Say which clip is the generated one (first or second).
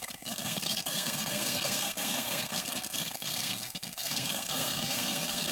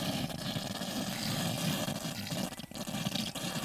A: first